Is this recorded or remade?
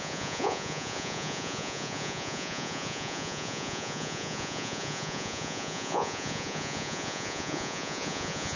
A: remade